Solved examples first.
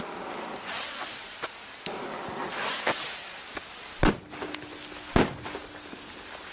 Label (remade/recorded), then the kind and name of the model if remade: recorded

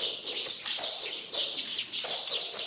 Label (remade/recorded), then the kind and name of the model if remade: recorded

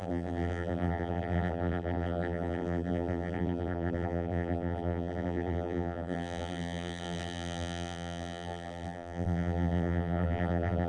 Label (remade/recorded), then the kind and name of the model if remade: remade, vocoder, BigVGAN v2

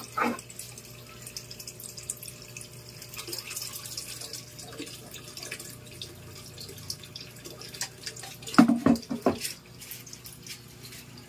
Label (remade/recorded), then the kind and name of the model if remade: recorded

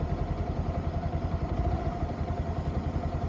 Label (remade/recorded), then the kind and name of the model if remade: remade, vocoder, BigVGAN v2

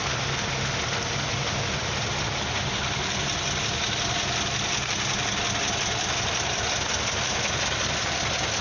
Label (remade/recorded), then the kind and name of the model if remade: recorded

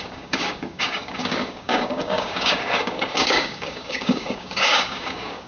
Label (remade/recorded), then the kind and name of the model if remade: remade, codec, DAC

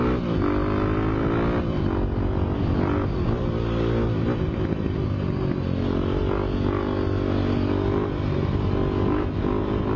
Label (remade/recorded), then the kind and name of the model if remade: recorded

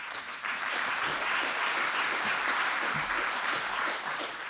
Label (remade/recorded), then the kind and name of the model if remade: remade, vocoder, BigVGAN v2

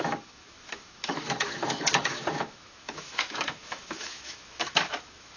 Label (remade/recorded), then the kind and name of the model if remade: remade, autoencoder, DAC-VAE